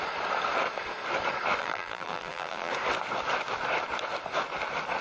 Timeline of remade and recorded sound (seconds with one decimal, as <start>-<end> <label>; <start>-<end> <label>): 0.0-1.6 recorded; 1.6-2.7 remade; 2.7-5.0 recorded